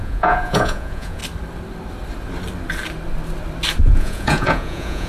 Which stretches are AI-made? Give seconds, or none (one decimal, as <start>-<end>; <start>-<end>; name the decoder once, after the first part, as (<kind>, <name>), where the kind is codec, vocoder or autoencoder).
0.0-1.2 (vocoder, Vocos); 3.8-5.1